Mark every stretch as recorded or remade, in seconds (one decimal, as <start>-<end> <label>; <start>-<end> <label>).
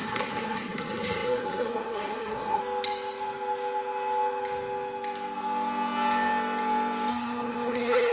0.0-2.6 remade; 2.6-7.1 recorded; 7.1-8.1 remade